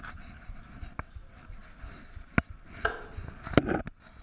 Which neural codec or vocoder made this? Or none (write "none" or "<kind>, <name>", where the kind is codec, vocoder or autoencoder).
none